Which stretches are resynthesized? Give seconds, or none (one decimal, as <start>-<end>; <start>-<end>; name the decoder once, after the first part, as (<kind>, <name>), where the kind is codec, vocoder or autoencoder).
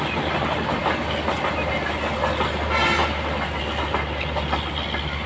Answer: none